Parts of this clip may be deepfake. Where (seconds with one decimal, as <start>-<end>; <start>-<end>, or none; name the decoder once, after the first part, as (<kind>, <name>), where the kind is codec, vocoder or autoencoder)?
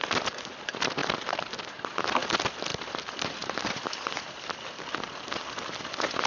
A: 1.0-2.0 (vocoder, BigVGAN v2); 2.7-5.0